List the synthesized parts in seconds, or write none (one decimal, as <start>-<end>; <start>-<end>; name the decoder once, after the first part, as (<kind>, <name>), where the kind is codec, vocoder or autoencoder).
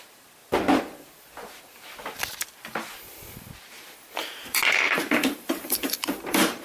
4.2-6.6 (vocoder, BigVGAN v2)